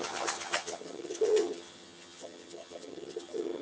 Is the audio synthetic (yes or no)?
yes